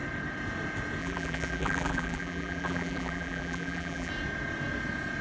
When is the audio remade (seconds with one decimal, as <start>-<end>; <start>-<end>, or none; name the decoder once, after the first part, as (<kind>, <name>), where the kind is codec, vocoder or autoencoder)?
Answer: 1.0-4.1 (vocoder, BigVGAN v2)